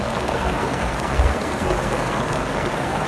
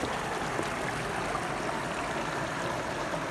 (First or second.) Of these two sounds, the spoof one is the first